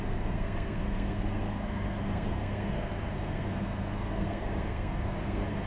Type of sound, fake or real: fake